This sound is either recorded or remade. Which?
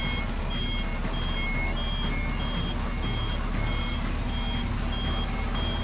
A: recorded